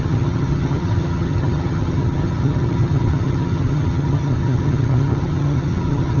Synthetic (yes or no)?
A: yes